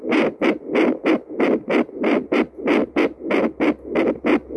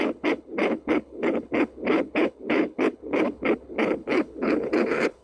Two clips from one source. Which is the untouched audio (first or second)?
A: first